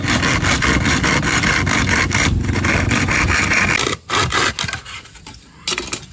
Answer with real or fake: real